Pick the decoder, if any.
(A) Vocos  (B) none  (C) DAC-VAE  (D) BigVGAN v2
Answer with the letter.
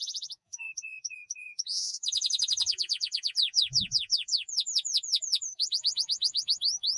A